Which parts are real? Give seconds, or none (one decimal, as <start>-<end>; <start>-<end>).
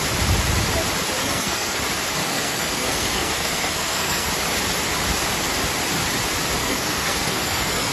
0.0-1.2; 1.8-2.2; 4.3-6.6